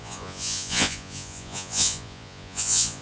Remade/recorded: remade